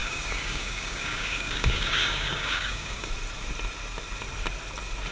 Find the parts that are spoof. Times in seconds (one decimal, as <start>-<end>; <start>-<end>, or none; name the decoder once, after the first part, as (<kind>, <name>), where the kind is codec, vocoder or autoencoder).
0.0-3.1 (codec, DAC)